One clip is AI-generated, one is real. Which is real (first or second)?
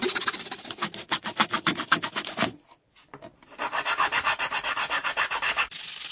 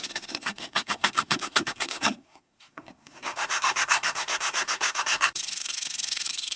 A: first